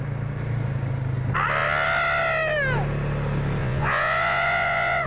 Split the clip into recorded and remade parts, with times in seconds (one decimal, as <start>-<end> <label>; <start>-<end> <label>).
0.0-3.6 recorded; 3.6-5.1 remade